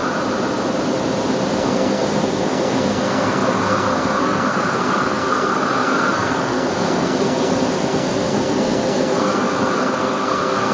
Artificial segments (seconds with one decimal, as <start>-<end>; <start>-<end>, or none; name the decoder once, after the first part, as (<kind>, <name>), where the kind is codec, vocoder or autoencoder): 1.5-10.7 (codec, SNAC)